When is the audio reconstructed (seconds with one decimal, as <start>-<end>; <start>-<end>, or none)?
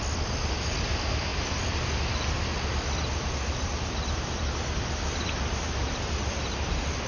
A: none